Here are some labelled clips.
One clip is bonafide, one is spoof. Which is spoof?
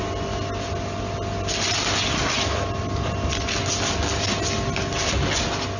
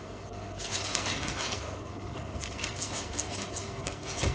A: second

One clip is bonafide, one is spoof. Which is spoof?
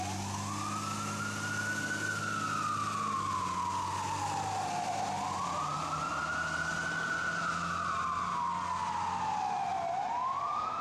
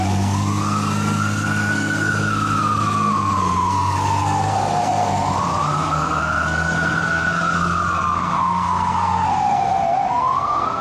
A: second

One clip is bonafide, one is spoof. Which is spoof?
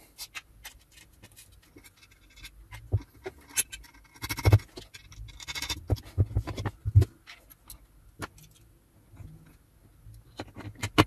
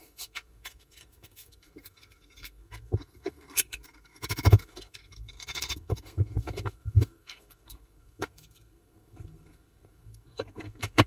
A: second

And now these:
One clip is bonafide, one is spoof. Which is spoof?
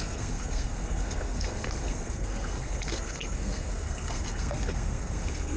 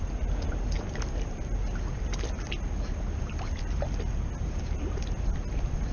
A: first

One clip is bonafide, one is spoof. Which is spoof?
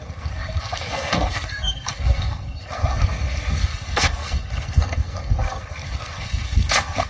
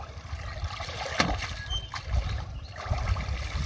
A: first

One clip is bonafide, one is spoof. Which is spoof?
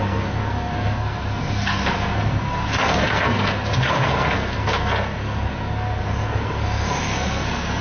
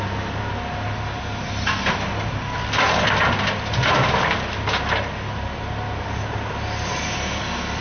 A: first